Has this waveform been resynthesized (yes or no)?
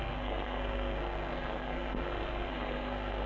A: yes